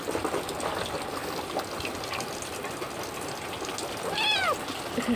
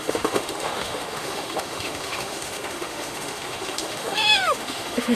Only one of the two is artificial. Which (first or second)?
second